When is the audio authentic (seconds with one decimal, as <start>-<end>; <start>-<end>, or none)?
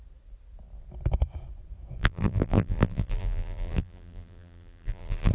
0.0-2.0